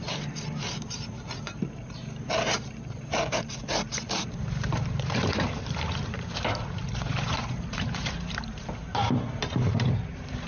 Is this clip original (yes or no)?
no